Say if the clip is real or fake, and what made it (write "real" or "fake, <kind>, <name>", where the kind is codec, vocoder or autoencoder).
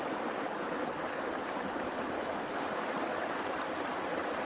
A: real